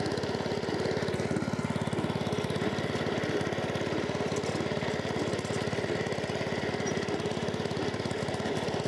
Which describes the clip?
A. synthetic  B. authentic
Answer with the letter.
B